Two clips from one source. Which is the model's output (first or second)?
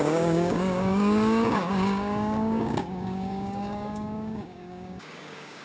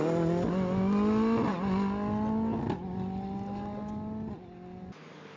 first